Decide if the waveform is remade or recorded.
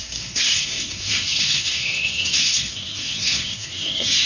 remade